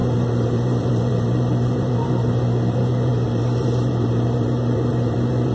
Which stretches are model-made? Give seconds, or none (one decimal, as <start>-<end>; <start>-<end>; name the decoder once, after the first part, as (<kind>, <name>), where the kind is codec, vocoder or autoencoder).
0.0-5.5 (vocoder, BigVGAN v2)

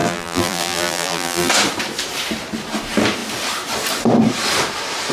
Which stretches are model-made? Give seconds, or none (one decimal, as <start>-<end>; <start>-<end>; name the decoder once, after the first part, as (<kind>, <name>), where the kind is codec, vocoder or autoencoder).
0.0-1.5 (vocoder, BigVGAN v2)

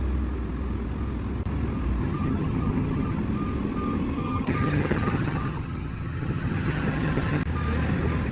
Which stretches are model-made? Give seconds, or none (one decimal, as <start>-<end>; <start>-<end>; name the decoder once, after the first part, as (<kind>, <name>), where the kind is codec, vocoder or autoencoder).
2.0-3.2 (vocoder, HiFi-GAN); 4.2-7.4

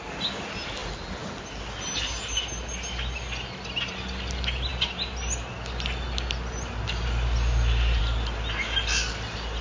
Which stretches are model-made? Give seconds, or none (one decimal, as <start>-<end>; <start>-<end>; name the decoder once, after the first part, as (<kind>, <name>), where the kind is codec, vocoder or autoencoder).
none

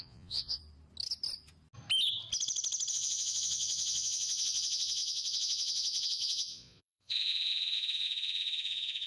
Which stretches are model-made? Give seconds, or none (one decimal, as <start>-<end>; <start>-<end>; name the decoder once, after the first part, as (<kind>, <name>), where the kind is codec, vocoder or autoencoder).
0.0-0.6 (vocoder, Vocos); 2.9-9.1

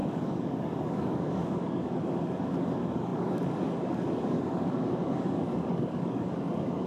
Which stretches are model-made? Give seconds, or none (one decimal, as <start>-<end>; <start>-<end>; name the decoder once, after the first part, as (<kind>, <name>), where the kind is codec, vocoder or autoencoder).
0.0-6.9 (codec, DAC)

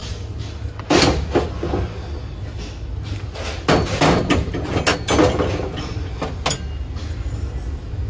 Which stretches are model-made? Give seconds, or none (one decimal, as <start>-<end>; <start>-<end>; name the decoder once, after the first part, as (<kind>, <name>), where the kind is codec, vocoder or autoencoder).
none